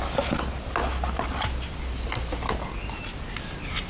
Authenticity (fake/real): real